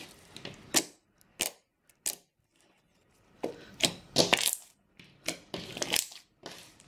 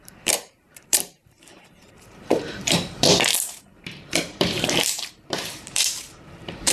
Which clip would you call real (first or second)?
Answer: first